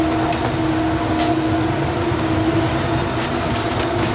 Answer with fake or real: real